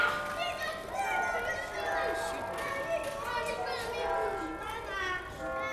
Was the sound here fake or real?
real